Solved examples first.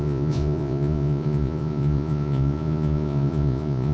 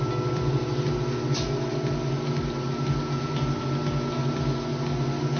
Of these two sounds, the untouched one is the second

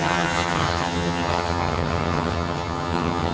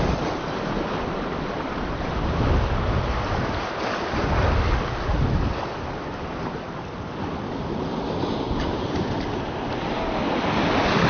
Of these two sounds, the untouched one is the second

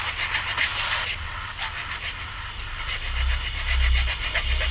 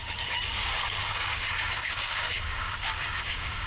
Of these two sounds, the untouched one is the first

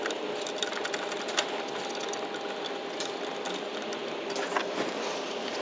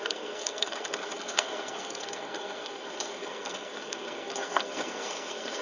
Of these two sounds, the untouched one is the first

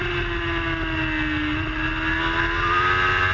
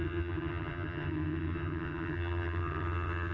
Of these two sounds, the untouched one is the first